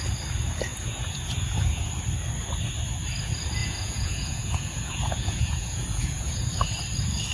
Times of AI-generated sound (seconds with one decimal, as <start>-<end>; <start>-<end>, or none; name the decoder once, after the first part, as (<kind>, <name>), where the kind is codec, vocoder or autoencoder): 0.7-1.9 (vocoder, Vocos); 3.6-6.5